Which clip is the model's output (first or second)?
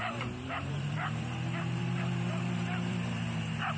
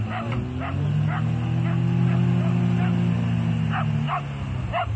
first